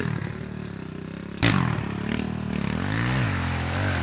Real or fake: real